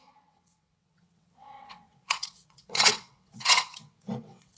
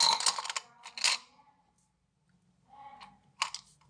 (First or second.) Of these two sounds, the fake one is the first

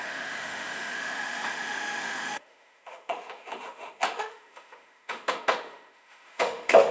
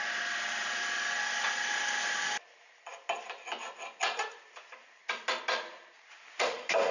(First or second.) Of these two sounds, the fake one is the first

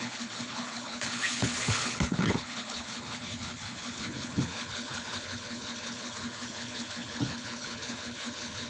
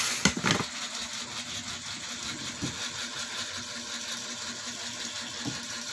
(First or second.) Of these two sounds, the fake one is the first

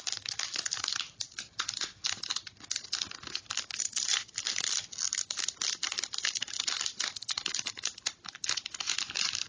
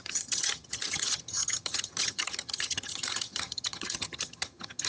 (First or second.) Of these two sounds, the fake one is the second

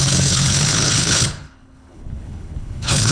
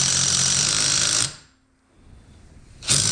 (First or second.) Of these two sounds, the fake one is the first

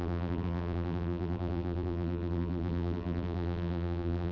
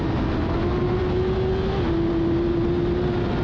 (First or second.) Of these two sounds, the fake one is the first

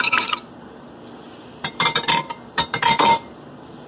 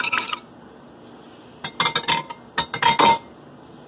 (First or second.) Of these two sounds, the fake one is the first